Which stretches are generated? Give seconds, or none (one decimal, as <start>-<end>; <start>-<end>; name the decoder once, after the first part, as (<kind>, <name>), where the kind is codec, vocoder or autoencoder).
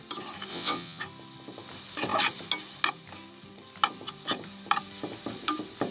0.5-1.0 (vocoder, WaveNeXt)